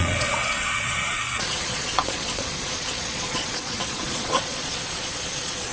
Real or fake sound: fake